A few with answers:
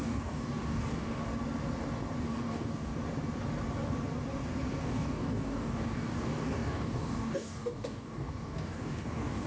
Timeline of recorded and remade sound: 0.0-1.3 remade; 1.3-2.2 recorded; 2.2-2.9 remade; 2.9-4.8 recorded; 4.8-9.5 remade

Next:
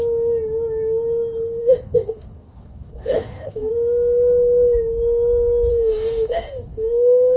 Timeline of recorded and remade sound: 0.0-1.6 recorded; 1.6-3.7 remade; 3.7-5.7 recorded; 5.7-7.4 remade

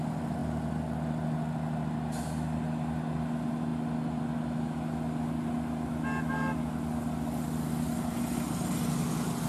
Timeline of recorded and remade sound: 0.0-9.5 recorded

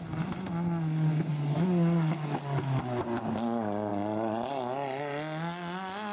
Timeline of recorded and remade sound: 0.0-1.3 recorded; 1.3-3.0 remade; 3.0-6.1 recorded